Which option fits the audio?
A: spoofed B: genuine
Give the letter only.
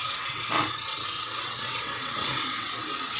A